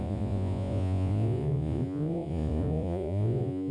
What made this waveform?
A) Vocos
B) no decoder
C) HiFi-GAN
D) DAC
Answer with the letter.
A